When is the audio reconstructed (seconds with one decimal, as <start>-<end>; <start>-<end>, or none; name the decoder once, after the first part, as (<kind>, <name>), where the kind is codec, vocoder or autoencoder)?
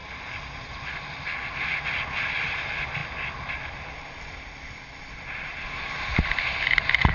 none